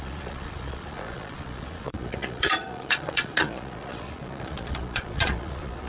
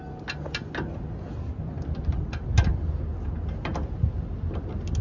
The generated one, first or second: first